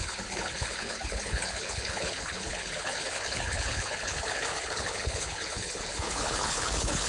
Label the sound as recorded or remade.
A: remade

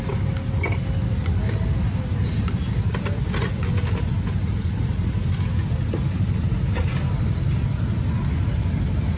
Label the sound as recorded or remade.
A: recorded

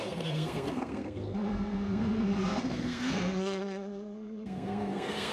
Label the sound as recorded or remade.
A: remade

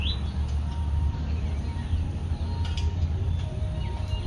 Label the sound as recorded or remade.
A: recorded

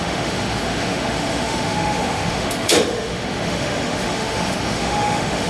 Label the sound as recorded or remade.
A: remade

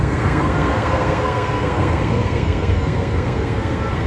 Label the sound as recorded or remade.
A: remade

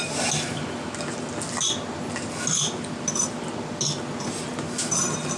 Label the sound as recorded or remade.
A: recorded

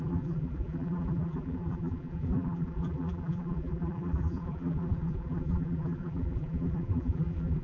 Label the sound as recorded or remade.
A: remade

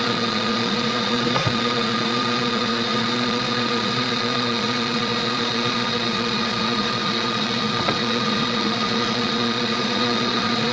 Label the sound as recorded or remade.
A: remade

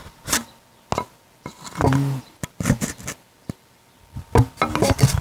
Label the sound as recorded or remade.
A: recorded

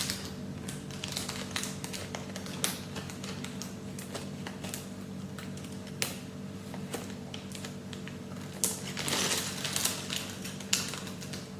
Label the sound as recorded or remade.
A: recorded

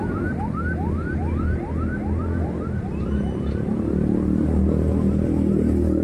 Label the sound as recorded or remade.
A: recorded